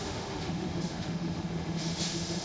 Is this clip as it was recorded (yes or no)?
no